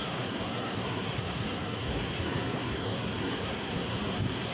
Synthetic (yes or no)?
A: yes